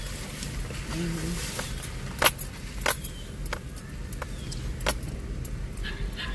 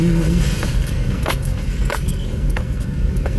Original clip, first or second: first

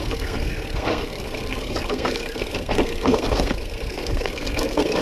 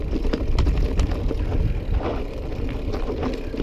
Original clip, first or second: second